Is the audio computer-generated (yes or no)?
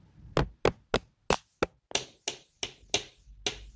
no